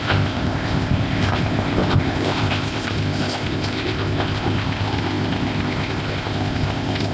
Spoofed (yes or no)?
yes